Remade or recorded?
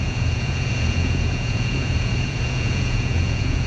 remade